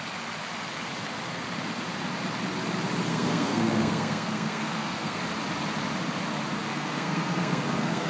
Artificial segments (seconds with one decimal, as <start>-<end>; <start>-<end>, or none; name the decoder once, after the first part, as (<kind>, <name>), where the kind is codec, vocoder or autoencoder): 3.1-5.2 (codec, SNAC); 6.7-8.1